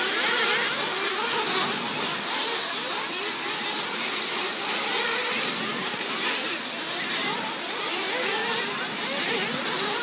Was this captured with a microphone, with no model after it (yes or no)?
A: yes